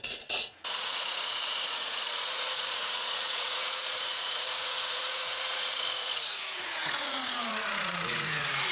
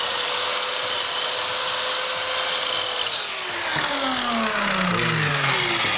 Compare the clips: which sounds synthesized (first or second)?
first